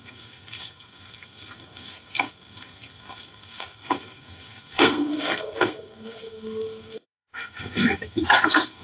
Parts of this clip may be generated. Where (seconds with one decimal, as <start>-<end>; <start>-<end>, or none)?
0.0-8.8